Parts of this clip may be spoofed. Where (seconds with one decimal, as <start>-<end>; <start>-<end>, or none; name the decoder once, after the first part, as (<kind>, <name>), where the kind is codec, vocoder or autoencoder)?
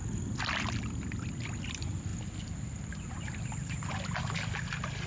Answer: none